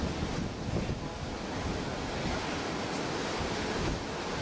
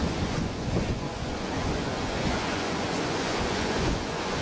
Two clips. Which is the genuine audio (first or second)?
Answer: first